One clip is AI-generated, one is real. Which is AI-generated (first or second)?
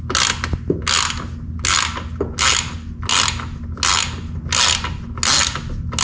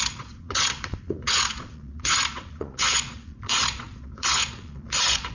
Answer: second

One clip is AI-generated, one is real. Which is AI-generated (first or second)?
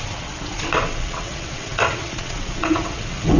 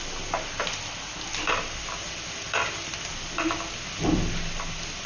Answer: first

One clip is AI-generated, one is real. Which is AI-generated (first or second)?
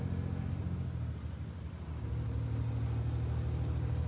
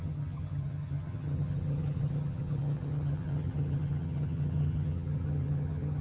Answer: second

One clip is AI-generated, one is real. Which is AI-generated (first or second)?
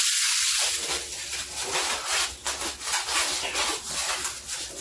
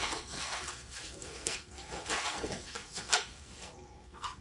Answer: second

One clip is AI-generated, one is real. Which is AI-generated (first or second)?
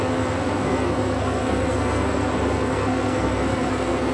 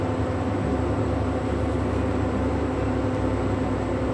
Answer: first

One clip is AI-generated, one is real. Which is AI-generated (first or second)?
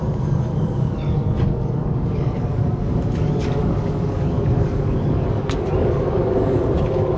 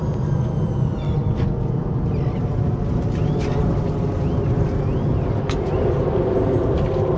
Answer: first